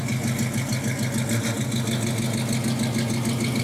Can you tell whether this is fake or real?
real